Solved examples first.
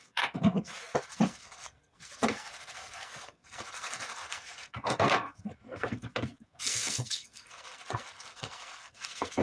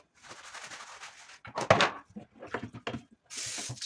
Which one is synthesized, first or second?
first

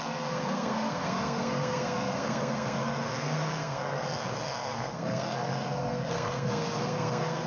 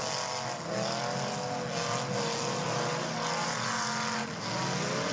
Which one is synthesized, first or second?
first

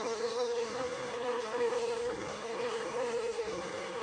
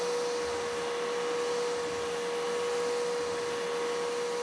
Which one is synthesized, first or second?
first